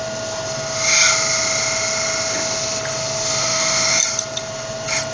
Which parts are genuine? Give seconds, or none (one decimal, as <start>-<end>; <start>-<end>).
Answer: 0.0-3.4; 4.0-5.1